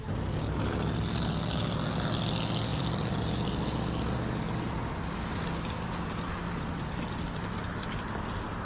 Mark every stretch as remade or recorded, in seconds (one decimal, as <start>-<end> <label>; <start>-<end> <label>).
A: 0.0-2.7 recorded; 2.7-3.3 remade; 3.3-8.7 recorded